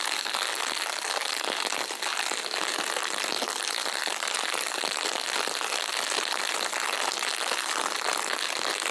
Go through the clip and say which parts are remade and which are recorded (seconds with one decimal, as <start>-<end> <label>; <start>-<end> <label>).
0.0-8.9 recorded